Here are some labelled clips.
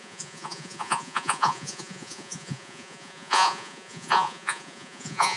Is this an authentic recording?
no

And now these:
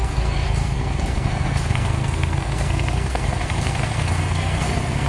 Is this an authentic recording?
no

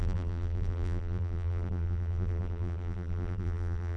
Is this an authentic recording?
no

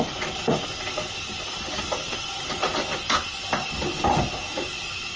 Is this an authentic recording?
yes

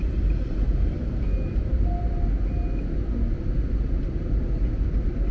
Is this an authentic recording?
yes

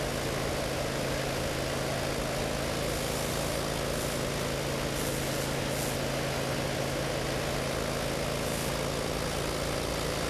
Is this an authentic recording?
yes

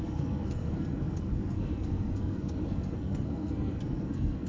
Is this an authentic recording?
no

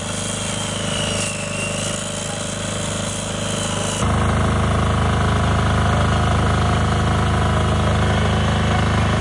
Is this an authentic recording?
yes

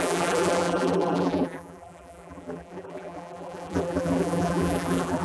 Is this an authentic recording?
no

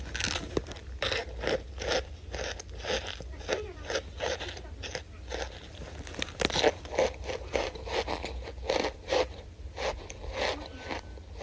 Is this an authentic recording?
yes